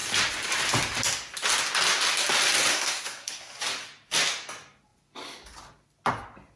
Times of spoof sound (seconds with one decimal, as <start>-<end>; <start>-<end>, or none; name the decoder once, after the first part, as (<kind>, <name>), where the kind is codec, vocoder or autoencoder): 2.7-3.6 (codec, SNAC)